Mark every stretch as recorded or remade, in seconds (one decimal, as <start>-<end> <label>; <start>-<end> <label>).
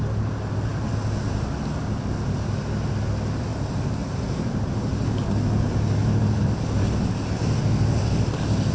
0.0-3.5 recorded; 3.5-5.2 remade; 5.2-6.0 recorded; 6.0-7.1 remade; 7.1-8.7 recorded